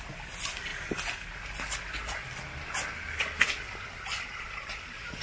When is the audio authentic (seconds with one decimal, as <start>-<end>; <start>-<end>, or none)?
0.7-3.8